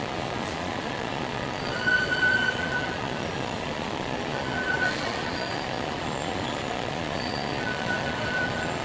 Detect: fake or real fake